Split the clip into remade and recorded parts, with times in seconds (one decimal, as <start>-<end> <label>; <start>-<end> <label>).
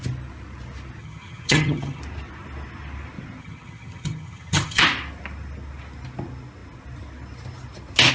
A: 0.0-1.0 recorded; 1.0-2.0 remade; 2.0-3.4 recorded; 3.4-4.8 remade; 4.8-8.1 recorded